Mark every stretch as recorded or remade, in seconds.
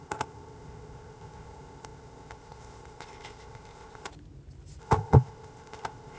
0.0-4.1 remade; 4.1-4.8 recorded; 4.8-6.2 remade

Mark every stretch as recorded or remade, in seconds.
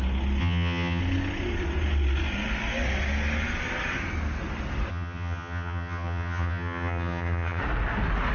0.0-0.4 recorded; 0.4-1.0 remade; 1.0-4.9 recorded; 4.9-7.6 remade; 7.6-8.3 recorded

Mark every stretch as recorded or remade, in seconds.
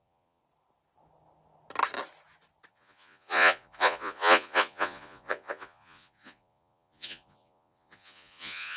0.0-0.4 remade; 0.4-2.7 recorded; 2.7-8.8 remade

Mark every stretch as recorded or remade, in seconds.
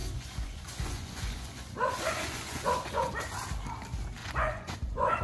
0.0-3.1 remade; 3.1-4.2 recorded; 4.2-5.2 remade